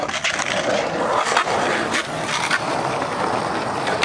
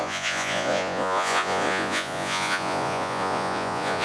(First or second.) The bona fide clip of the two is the first